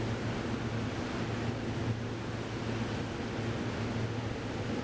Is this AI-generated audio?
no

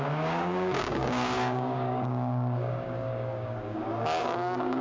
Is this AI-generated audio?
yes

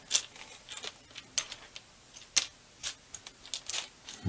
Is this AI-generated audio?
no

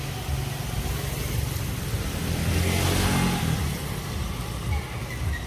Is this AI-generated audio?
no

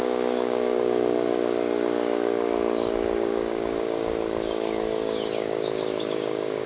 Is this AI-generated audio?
yes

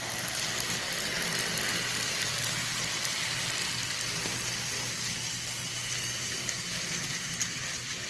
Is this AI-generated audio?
no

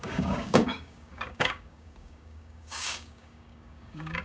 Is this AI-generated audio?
yes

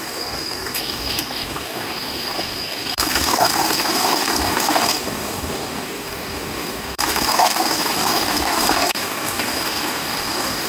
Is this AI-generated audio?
yes